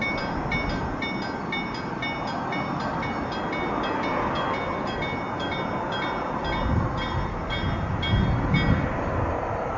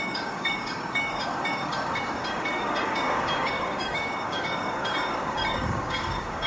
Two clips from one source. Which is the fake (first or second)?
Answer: second